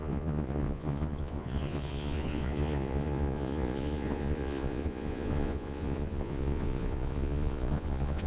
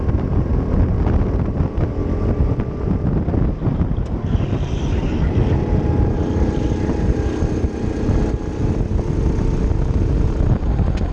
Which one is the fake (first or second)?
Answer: first